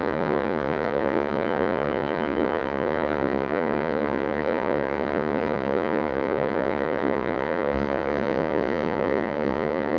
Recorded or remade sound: remade